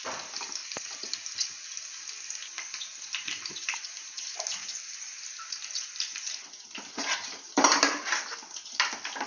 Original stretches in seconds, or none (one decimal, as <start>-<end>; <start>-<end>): 0.0-0.6; 1.5-2.9; 8.1-9.3